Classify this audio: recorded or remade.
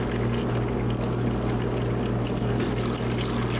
recorded